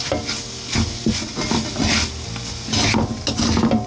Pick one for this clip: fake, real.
real